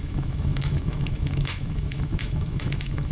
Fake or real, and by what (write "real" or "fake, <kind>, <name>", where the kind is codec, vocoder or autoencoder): fake, autoencoder, DAC-VAE